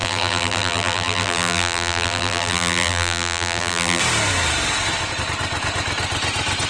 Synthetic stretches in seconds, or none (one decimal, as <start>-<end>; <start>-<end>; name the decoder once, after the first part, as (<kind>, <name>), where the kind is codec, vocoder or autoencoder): 0.0-4.0 (vocoder, BigVGAN v2)